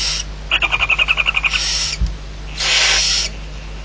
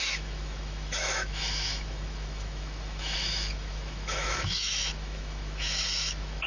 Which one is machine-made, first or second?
second